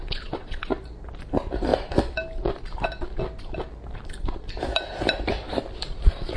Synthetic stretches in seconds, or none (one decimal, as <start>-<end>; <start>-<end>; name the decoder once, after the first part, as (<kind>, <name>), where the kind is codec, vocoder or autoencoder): 0.0-0.7 (vocoder, WaveNeXt)